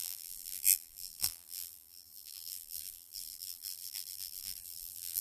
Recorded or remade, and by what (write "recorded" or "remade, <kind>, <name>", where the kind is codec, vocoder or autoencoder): remade, vocoder, BigVGAN v2